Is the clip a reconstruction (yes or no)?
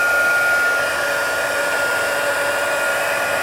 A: no